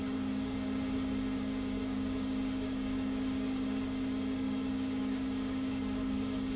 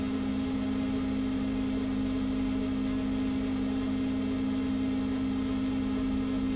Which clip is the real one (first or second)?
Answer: second